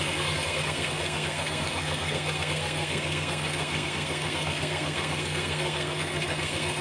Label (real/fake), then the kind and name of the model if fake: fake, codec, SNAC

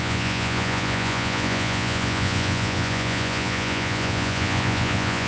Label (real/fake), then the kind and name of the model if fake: fake, vocoder, Vocos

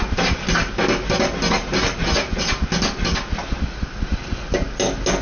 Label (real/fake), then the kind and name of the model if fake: real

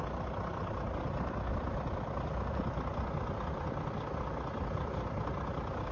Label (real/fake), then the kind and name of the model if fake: real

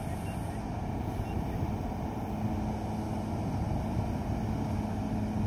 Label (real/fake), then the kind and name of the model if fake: real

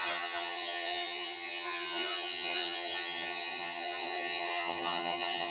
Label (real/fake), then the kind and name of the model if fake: fake, vocoder, HiFi-GAN